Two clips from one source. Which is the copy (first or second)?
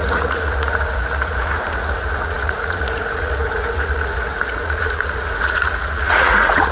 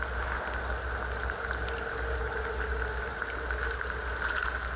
first